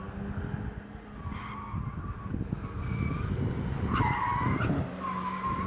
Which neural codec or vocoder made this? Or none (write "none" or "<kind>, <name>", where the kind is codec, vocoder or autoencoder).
none